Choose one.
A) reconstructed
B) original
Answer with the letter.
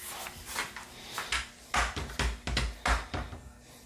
B